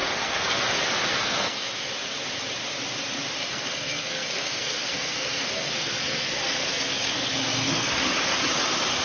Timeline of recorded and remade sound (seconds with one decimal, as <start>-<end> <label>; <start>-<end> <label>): 0.0-0.6 remade; 0.6-1.1 recorded; 1.1-1.7 remade; 1.7-3.4 recorded; 3.4-7.9 remade; 7.9-9.0 recorded